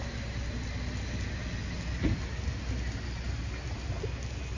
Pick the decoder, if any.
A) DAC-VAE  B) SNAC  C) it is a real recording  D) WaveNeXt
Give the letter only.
C